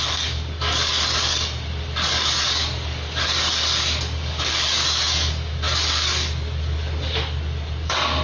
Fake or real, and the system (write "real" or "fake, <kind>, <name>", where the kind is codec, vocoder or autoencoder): fake, codec, DAC